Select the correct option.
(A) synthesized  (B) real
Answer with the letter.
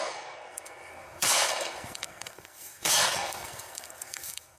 A